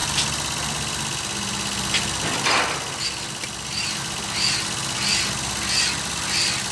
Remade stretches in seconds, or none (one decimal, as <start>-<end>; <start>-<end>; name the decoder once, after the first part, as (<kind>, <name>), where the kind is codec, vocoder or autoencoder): none